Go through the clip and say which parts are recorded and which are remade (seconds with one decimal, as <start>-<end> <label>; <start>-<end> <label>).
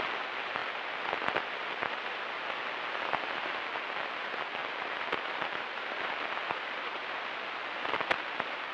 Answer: 0.0-8.7 recorded